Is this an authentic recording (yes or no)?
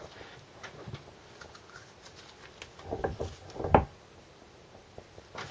yes